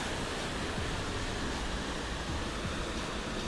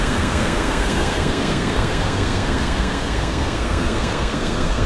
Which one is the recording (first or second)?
first